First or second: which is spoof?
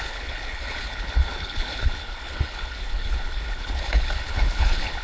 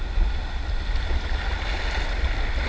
first